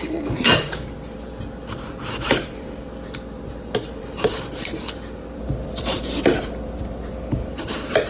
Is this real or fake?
fake